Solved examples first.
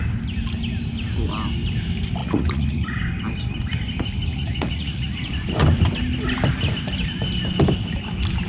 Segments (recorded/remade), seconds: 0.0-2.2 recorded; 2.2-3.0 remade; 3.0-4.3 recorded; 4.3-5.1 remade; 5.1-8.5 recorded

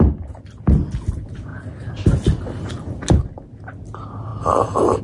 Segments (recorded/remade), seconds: 0.0-5.0 recorded

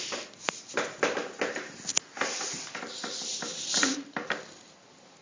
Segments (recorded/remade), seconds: 0.0-5.2 recorded

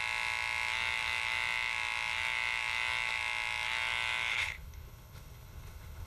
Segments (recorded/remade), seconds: 0.0-4.3 recorded; 4.3-6.1 remade